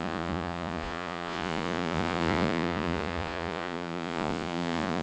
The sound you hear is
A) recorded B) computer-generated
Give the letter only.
B